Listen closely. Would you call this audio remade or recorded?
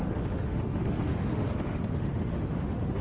remade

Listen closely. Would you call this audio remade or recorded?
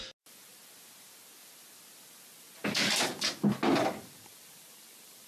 recorded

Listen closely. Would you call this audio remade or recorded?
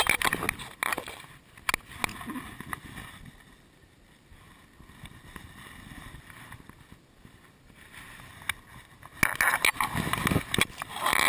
recorded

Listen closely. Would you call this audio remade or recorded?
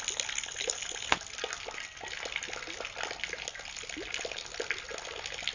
recorded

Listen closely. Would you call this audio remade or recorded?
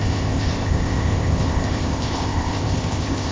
remade